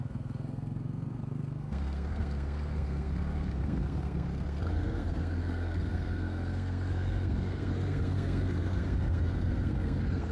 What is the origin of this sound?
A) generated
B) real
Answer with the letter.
A